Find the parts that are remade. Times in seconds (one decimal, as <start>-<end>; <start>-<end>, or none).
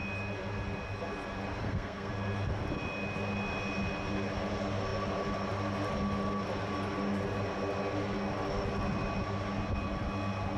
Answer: 1.6-2.1